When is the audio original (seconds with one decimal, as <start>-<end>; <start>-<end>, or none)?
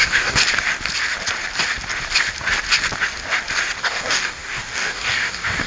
0.4-3.8